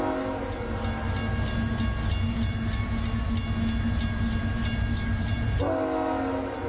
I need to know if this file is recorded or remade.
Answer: recorded